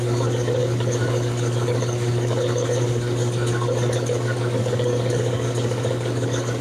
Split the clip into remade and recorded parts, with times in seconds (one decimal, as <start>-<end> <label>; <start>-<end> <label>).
0.0-6.6 remade

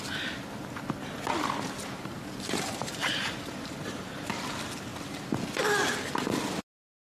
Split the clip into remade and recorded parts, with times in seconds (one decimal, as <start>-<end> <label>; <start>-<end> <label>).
0.0-1.8 recorded; 1.8-4.3 remade; 4.3-7.2 recorded

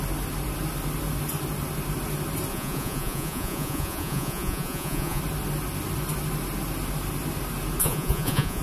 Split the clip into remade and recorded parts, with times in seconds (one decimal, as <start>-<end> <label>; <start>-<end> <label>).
0.0-2.5 recorded; 2.5-5.2 remade; 5.2-7.8 recorded; 7.8-8.6 remade

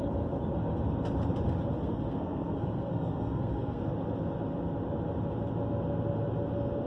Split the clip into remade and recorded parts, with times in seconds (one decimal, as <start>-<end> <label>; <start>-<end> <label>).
0.0-1.8 recorded; 1.8-3.8 remade; 3.8-6.9 recorded

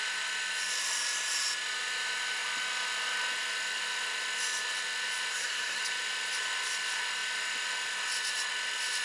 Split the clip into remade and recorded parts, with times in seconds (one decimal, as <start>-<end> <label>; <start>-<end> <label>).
0.0-5.3 recorded; 5.3-5.8 remade; 5.8-9.0 recorded

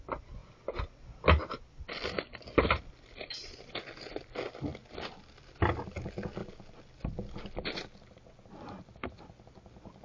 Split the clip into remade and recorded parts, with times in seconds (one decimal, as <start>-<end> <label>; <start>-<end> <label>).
0.0-10.0 recorded